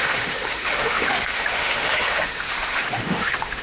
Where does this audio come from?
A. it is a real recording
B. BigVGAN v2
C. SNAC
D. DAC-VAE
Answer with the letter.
D